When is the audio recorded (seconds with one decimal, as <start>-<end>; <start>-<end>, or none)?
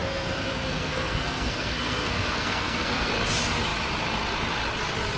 3.1-5.2